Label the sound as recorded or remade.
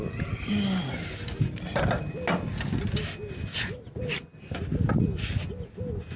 recorded